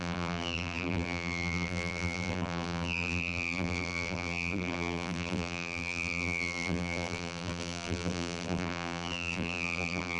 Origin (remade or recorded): remade